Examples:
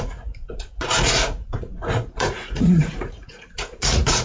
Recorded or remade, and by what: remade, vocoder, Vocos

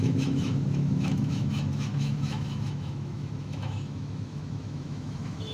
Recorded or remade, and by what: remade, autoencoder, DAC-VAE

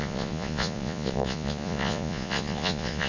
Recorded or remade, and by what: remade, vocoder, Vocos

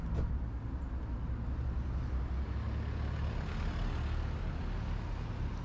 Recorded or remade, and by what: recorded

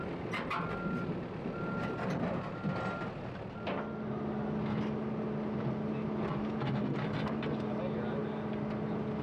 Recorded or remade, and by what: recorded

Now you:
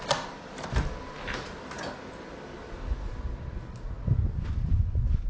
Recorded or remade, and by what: recorded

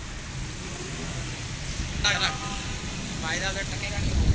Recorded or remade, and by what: recorded